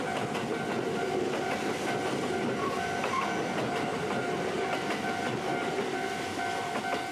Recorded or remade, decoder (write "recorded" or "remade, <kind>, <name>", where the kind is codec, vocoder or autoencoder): recorded